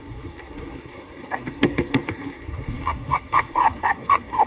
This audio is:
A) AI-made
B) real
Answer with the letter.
A